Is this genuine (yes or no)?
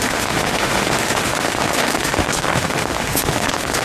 no